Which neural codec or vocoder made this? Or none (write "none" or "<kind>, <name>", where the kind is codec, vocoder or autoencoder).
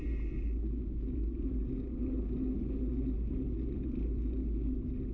none